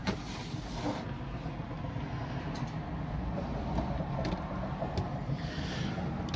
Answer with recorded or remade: recorded